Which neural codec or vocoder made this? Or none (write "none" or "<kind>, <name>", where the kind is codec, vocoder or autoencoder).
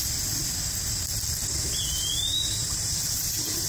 none